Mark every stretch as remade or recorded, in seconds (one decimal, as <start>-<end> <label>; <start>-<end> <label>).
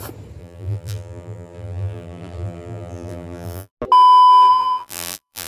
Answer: 0.0-0.4 recorded; 0.4-3.7 remade; 3.7-4.5 recorded; 4.5-5.5 remade